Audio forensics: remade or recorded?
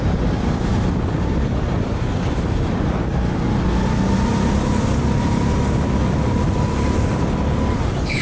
recorded